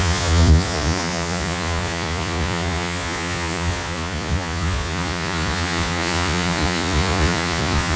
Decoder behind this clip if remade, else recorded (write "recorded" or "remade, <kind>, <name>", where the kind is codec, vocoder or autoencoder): remade, vocoder, Vocos